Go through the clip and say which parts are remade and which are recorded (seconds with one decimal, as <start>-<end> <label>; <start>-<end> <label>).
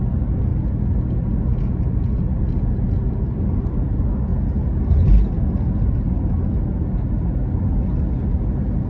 0.0-8.9 recorded